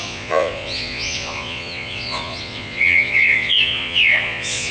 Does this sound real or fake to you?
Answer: fake